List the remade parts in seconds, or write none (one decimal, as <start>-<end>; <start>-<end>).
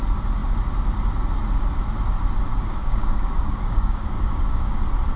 2.5-4.8